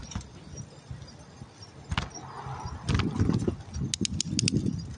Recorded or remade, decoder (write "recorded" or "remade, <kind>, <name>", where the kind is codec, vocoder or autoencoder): recorded